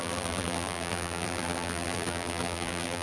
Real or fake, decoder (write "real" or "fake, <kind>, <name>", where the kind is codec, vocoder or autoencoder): fake, vocoder, BigVGAN v2